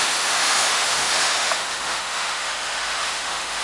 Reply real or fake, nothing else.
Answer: fake